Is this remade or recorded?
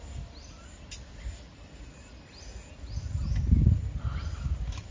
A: recorded